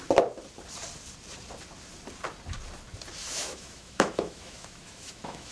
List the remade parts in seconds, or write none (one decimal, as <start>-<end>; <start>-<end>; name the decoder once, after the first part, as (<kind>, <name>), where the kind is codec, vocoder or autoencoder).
3.2-5.5 (autoencoder, DAC-VAE)